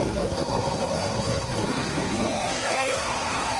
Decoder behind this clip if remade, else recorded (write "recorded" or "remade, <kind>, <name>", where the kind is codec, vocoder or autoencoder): remade, codec, SNAC